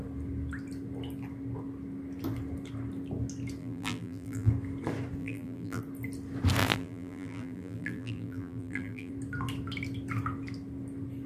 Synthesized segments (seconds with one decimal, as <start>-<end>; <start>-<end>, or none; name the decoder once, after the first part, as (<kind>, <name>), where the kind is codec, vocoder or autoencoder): 3.6-4.5 (vocoder, BigVGAN v2); 5.2-5.8; 6.6-9.1